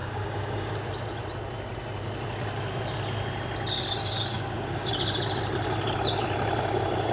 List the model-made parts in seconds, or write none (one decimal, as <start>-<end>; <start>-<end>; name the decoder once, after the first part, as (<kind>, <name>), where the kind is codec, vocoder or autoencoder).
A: 0.0-0.9 (codec, DAC); 4.0-4.9

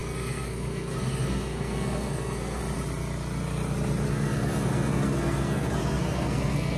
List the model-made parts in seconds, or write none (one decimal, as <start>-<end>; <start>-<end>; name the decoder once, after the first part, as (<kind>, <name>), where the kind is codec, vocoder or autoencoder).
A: 0.0-2.6 (codec, SNAC); 4.1-6.8

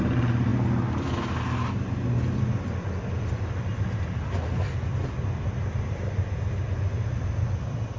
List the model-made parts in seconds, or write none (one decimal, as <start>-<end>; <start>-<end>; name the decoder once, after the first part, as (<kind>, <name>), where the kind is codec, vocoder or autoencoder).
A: none

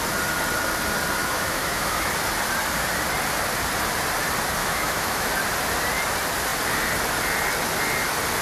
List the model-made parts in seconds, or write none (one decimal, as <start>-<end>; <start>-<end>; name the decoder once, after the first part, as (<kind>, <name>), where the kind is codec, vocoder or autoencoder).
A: 1.2-2.1 (autoencoder, DAC-VAE); 4.6-5.3

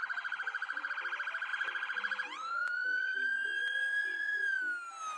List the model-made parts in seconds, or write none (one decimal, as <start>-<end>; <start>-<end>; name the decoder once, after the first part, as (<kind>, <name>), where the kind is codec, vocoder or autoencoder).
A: 0.0-0.9 (vocoder, Vocos); 1.5-4.6

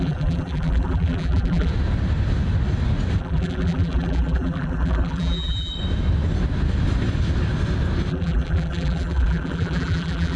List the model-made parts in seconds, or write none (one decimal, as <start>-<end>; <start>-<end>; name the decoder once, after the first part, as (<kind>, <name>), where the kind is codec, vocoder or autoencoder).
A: 0.0-1.7 (vocoder, BigVGAN v2); 3.2-5.7; 8.1-10.4